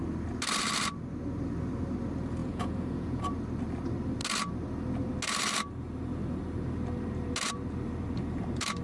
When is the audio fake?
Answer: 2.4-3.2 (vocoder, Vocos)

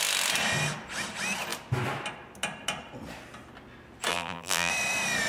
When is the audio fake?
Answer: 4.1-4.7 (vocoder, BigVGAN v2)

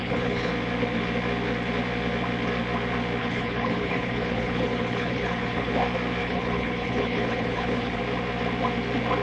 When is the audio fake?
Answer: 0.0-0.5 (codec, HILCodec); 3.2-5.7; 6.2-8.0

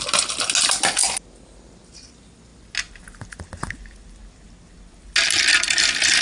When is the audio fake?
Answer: none

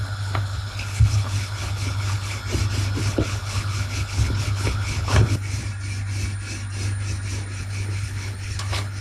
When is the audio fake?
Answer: 0.0-2.4 (codec, HILCodec); 3.0-5.6; 7.6-9.0

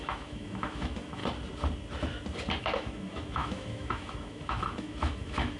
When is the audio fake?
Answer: 0.0-1.2 (autoencoder, DAC-VAE); 2.6-5.6